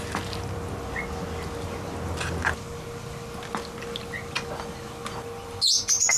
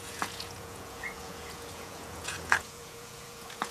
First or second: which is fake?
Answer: second